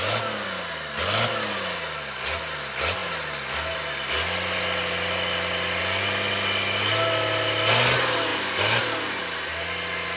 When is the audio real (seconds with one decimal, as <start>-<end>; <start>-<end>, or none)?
0.0-10.2